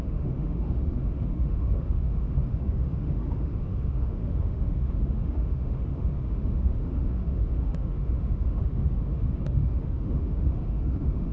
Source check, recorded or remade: remade